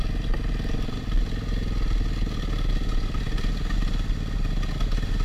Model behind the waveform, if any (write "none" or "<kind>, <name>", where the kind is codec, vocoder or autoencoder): none